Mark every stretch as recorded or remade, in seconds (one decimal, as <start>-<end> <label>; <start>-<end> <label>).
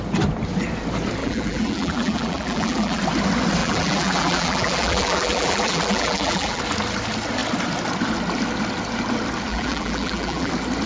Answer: 0.0-1.2 recorded; 1.2-3.0 remade; 3.0-3.6 recorded; 3.6-6.6 remade; 6.6-9.5 recorded; 9.5-10.5 remade; 10.5-10.9 recorded